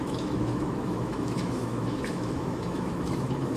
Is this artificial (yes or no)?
yes